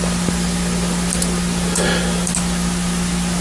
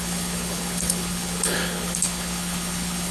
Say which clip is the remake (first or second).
second